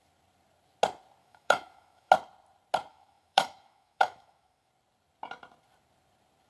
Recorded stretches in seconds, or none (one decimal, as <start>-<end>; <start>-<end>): 0.0-1.2; 2.1-2.9; 4.7-6.5